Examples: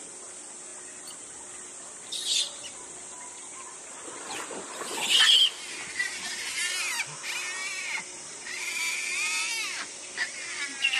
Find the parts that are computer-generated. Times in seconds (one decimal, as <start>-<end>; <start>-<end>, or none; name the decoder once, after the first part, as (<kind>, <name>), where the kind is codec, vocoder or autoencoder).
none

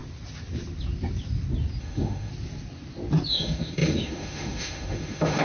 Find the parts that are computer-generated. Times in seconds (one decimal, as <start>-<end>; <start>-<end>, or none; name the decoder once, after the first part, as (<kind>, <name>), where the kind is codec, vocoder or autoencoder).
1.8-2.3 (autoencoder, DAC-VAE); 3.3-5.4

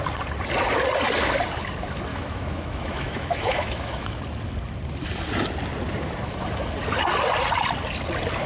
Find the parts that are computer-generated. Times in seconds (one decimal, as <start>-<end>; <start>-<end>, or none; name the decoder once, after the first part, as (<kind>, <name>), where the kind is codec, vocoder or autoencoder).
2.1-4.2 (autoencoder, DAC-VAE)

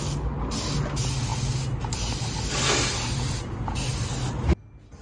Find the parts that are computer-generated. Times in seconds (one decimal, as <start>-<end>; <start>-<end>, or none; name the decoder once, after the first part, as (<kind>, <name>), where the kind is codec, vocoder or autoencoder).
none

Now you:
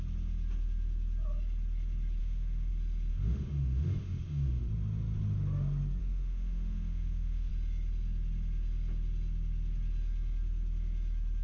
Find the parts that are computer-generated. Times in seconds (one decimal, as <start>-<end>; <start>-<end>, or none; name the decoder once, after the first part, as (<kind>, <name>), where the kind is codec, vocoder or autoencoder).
2.2-2.7 (autoencoder, DAC-VAE); 3.1-4.6; 6.0-7.5

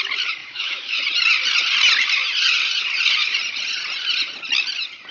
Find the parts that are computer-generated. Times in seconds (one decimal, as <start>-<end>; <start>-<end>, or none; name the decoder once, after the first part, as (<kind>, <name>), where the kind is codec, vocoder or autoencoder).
0.4-1.0 (autoencoder, DAC-VAE)

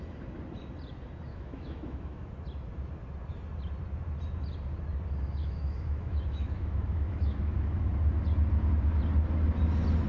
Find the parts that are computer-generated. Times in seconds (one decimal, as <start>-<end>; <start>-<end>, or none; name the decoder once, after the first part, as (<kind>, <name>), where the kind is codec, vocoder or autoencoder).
1.3-2.3 (autoencoder, DAC-VAE); 5.4-7.9